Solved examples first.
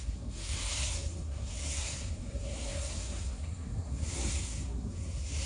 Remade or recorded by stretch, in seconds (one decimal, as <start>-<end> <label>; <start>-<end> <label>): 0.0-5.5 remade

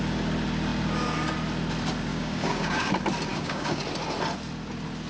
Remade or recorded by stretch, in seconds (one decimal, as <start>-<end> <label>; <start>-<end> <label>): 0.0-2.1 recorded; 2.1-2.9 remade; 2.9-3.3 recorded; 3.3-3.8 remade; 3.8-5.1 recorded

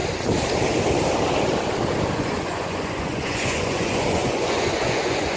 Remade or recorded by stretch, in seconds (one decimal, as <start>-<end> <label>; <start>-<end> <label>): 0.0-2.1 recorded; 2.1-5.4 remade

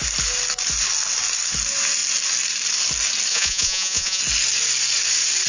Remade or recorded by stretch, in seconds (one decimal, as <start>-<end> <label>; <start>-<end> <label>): 0.0-3.3 recorded; 3.3-4.2 remade; 4.2-5.5 recorded

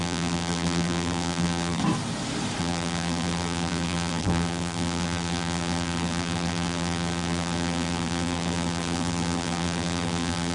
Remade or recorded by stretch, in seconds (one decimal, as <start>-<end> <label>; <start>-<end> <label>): 0.0-1.8 remade; 1.8-2.6 recorded; 2.6-10.5 remade

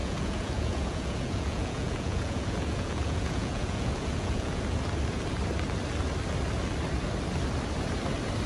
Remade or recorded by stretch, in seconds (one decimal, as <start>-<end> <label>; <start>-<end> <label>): 0.0-4.6 remade; 4.6-8.5 recorded